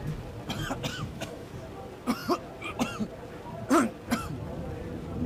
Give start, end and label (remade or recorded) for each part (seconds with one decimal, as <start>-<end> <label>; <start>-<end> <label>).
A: 0.0-0.9 recorded; 0.9-1.5 remade; 1.5-5.3 recorded